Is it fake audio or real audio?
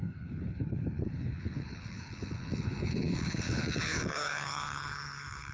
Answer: fake